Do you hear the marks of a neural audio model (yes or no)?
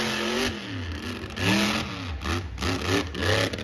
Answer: no